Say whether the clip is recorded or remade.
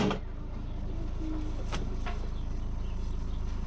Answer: recorded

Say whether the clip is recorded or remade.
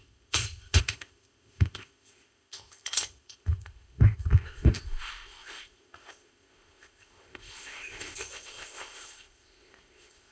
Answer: remade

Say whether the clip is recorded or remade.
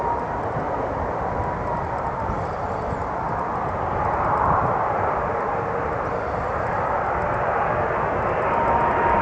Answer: recorded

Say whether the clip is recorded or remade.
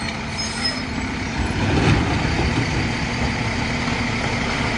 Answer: recorded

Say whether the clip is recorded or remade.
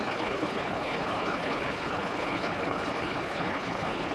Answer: remade